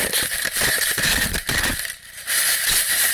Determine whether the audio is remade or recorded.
remade